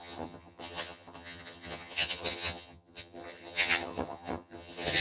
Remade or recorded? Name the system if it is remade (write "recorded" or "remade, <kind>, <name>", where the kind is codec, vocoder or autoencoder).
remade, vocoder, HiFi-GAN